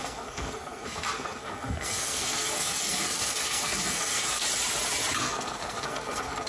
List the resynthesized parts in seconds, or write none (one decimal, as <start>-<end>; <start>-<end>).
0.0-4.4; 5.2-6.5